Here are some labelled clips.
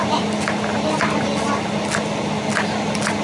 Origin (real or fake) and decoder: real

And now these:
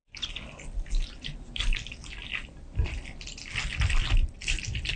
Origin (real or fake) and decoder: real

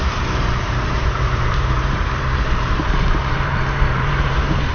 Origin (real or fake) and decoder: fake, vocoder, BigVGAN v2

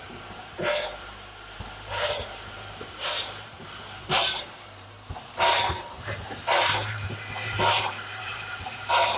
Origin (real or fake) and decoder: fake, vocoder, BigVGAN v2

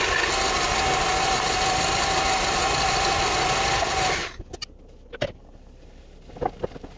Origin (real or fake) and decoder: real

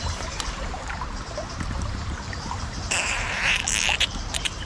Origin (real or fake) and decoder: fake, vocoder, BigVGAN v2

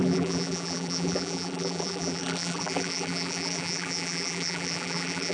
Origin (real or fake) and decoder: fake, vocoder, BigVGAN v2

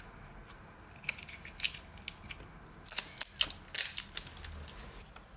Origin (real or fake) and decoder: real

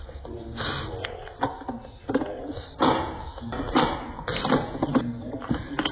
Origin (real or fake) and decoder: real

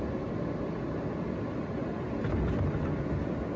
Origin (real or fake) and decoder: real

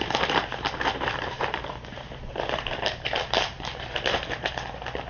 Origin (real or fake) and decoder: fake, vocoder, BigVGAN v2